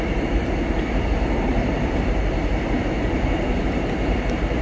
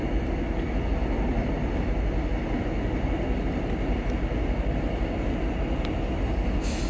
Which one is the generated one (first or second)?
first